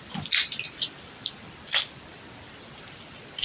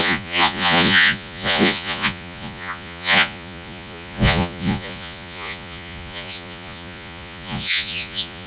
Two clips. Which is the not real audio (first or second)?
second